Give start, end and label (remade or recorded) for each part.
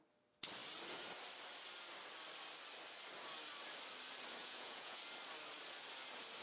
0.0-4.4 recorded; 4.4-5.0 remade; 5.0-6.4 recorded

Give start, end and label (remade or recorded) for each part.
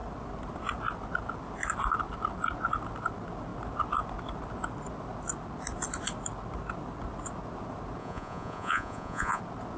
0.0-8.0 recorded; 8.0-9.4 remade; 9.4-9.8 recorded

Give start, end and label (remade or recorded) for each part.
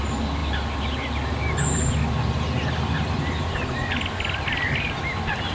0.0-5.5 recorded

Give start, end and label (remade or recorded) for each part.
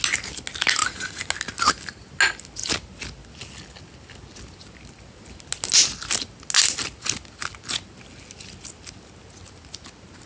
0.0-0.8 recorded; 0.8-1.3 remade; 1.3-10.3 recorded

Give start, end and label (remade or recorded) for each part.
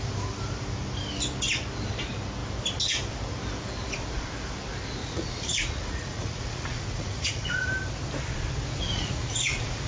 0.0-5.0 recorded; 5.0-7.7 remade; 7.7-8.8 recorded; 8.8-9.9 remade